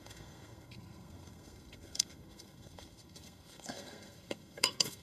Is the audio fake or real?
fake